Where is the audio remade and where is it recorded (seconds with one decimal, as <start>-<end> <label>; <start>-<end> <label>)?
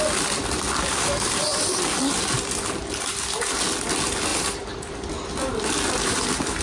0.0-6.6 recorded